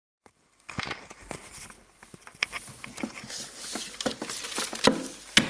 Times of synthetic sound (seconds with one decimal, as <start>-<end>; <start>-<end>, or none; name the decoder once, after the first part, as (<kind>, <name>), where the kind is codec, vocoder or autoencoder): none